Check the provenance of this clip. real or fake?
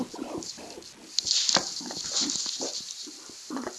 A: real